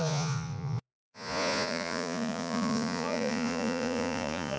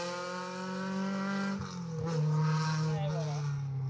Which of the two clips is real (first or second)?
second